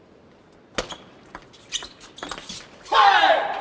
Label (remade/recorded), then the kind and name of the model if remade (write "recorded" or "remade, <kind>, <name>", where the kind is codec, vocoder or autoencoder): recorded